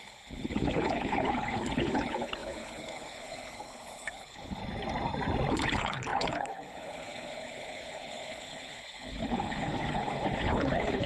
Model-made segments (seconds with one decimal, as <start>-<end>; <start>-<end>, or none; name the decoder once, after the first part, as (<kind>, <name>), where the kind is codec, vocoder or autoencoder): 0.0-4.6 (codec, HILCodec); 5.5-11.1